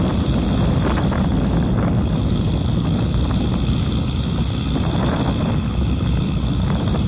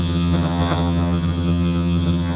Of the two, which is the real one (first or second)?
first